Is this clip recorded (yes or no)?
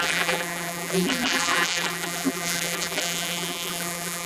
no